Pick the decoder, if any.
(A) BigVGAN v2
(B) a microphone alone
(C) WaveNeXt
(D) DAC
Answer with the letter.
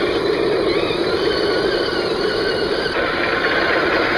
A